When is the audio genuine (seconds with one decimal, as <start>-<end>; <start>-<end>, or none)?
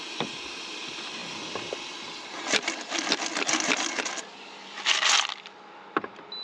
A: 0.0-6.4